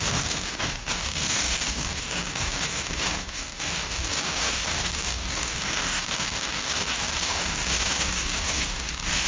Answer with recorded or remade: remade